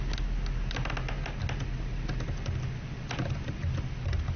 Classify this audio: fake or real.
real